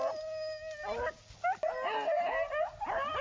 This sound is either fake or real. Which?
real